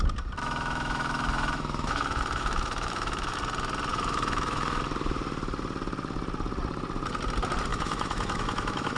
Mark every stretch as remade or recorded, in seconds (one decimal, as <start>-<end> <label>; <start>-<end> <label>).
0.0-0.4 recorded; 0.4-3.4 remade; 3.4-3.9 recorded; 3.9-4.8 remade; 4.8-7.7 recorded; 7.7-9.0 remade